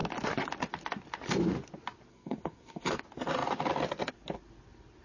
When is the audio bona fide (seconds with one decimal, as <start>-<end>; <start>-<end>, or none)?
0.0-2.1; 3.0-5.0